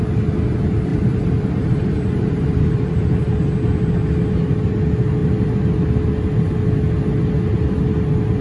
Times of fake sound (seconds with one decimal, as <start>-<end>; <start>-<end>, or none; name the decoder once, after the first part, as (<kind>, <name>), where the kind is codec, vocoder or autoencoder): 0.9-3.1 (vocoder, BigVGAN v2)